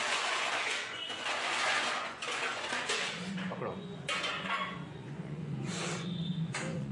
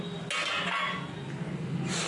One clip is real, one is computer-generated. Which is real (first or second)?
second